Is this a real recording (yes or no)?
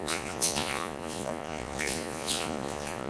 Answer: no